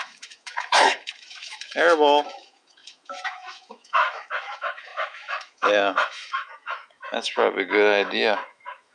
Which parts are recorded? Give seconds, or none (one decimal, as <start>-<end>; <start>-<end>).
none